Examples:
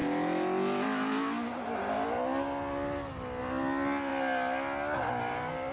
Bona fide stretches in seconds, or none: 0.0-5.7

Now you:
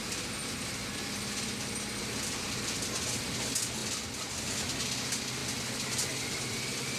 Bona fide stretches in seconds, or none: 0.0-7.0

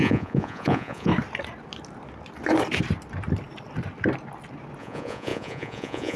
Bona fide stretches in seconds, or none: 1.1-4.8

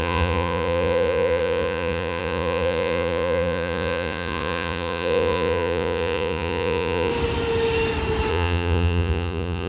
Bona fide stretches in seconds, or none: 7.1-8.3

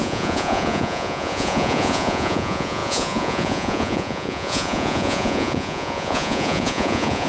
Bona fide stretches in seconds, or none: none

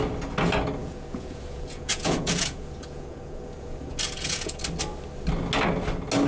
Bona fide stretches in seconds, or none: 0.0-0.8; 4.6-6.3

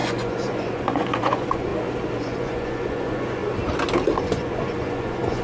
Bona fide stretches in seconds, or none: 1.7-2.2; 3.4-4.2

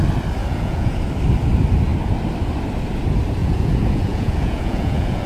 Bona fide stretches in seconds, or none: 0.0-0.4; 0.9-3.4